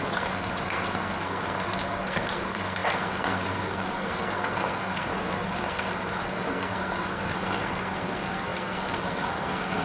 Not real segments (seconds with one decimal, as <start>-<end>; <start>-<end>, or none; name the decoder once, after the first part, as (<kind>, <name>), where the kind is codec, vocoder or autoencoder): 0.0-9.8 (codec, SNAC)